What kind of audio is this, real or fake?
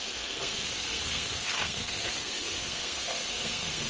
fake